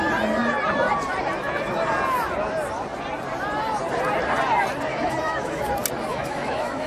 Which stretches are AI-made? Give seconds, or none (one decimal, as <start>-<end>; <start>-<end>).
4.9-5.6; 6.1-6.9